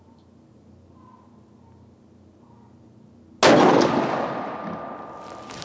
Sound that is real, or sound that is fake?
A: real